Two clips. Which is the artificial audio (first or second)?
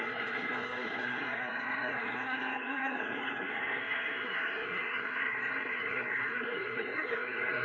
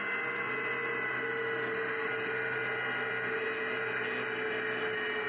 first